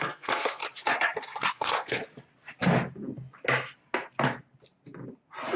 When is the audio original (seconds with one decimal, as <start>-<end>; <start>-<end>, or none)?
0.6-1.5; 2.0-5.6